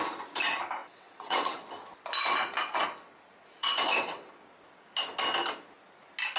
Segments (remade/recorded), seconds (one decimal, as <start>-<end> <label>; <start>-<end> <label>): 0.0-0.8 recorded; 0.8-1.6 remade; 1.6-3.6 recorded; 3.6-4.3 remade; 4.3-6.4 recorded